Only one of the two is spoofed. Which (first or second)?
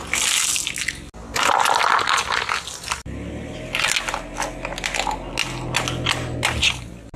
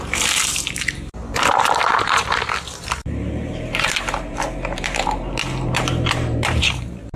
second